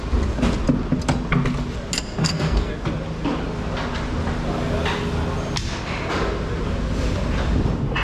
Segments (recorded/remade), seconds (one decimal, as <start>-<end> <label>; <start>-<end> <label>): 0.0-2.2 recorded; 2.2-2.7 remade; 2.7-8.0 recorded